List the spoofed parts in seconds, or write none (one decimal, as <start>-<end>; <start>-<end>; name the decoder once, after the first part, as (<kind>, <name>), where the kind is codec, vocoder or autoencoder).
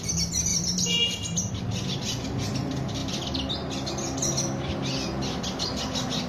0.5-1.5 (vocoder, BigVGAN v2)